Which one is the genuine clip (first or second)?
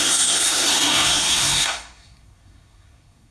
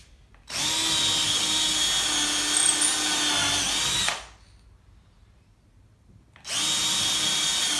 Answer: second